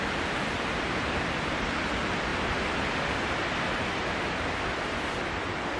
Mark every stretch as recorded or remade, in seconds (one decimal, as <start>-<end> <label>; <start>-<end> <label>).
0.0-5.8 recorded